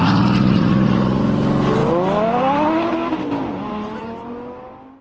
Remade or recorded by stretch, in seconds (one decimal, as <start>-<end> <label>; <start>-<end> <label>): 0.0-0.4 recorded; 0.4-1.2 remade; 1.2-5.0 recorded